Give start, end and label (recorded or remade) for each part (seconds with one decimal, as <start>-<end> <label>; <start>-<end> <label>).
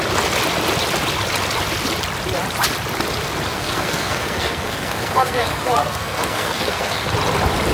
0.0-3.5 recorded; 3.5-7.1 remade; 7.1-7.7 recorded